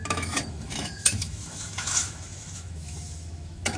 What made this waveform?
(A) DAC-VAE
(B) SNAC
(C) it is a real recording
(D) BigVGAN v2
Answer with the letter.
A